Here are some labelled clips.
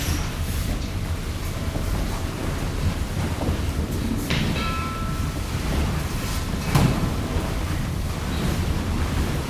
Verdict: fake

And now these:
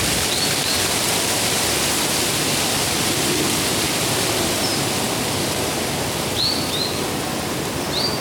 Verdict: real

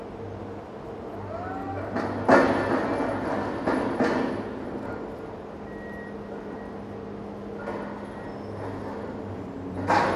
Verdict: real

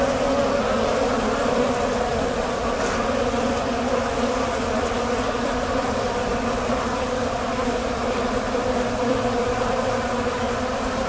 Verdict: fake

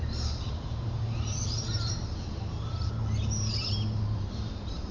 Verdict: fake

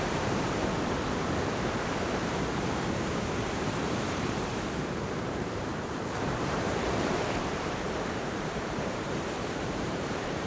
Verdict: fake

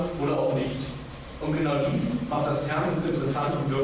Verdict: fake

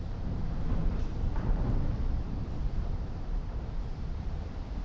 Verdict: fake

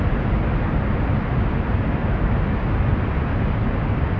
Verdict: real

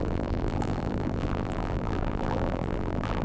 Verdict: fake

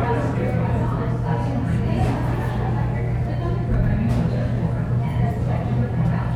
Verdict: real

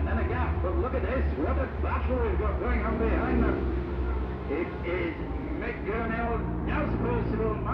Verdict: fake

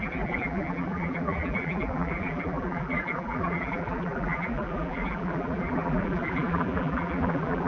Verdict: fake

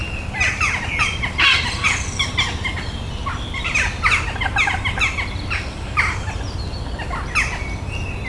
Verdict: real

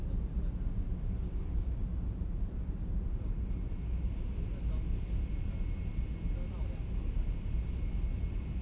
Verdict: real